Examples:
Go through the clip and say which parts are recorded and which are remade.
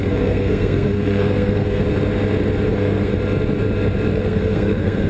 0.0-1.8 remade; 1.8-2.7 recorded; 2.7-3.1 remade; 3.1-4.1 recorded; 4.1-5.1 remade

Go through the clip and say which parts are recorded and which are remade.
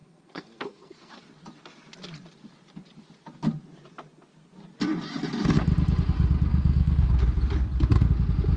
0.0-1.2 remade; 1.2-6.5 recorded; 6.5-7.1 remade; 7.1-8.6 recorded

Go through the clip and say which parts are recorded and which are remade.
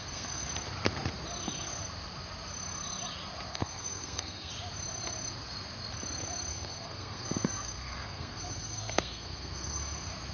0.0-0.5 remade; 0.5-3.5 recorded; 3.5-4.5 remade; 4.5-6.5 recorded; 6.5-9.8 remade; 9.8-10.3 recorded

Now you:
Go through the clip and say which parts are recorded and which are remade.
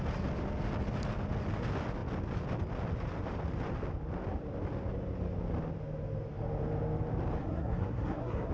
0.0-7.4 recorded; 7.4-8.5 remade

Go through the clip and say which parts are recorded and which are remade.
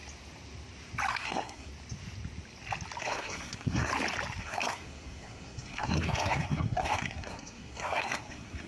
0.0-1.1 recorded; 1.1-1.7 remade; 1.7-3.0 recorded; 3.0-3.9 remade; 3.9-4.4 recorded; 4.4-8.7 remade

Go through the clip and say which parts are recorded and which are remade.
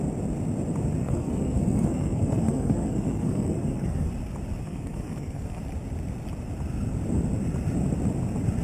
0.0-1.0 recorded; 1.0-4.1 remade; 4.1-4.6 recorded; 4.6-5.6 remade; 5.6-8.6 recorded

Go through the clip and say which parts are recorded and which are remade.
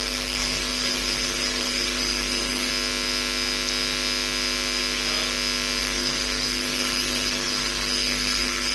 0.0-2.7 remade; 2.7-5.8 recorded; 5.8-8.7 remade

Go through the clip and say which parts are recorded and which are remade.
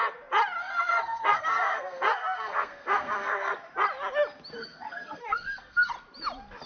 0.0-0.6 recorded; 0.6-3.5 remade; 3.5-4.6 recorded; 4.6-5.9 remade; 5.9-6.7 recorded